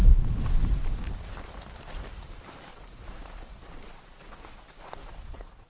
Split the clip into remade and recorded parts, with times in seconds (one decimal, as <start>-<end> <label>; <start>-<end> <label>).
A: 0.0-2.7 recorded; 2.7-5.7 remade